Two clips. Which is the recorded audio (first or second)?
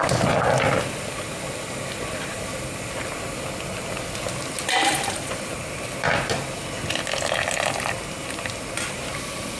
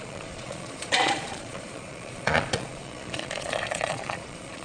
first